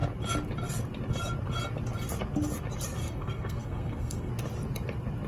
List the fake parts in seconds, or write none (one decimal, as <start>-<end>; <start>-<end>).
3.0-4.3